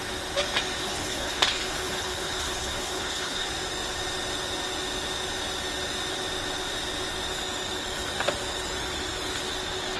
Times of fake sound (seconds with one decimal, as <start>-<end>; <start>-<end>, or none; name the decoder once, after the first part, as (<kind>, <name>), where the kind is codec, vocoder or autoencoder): 0.8-3.5 (codec, HILCodec)